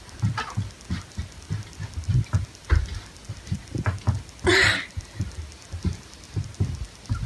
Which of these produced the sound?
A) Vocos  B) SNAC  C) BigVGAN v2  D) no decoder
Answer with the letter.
D